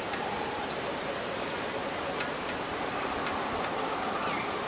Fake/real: real